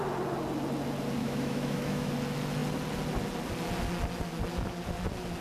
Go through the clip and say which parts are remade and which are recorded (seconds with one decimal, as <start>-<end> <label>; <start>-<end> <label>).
0.0-1.2 recorded; 1.2-2.1 remade; 2.1-5.4 recorded

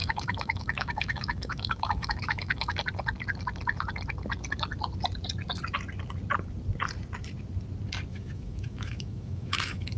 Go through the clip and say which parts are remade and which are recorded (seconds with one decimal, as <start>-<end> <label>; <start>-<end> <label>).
0.0-2.8 remade; 2.8-8.1 recorded; 8.1-10.0 remade

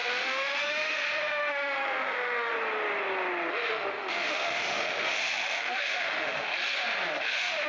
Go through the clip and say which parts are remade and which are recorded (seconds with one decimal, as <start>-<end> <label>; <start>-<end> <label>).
0.0-2.5 remade; 2.5-3.5 recorded; 3.5-6.5 remade; 6.5-7.2 recorded; 7.2-7.7 remade

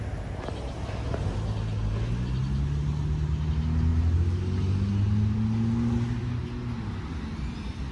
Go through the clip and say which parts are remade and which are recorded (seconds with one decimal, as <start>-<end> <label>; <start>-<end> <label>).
0.0-7.9 recorded